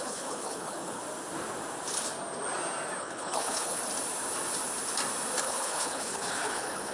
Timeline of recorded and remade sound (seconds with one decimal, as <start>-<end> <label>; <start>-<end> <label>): 0.0-1.0 remade; 1.0-3.0 recorded; 3.0-3.8 remade; 3.8-5.4 recorded; 5.4-6.9 remade